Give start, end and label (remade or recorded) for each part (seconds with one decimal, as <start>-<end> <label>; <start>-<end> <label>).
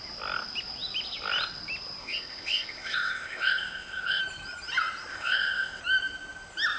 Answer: 0.0-2.0 recorded; 2.0-4.2 remade; 4.2-5.1 recorded; 5.1-5.8 remade; 5.8-6.8 recorded